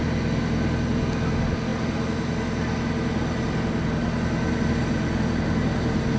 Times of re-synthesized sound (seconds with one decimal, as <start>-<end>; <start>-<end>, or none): none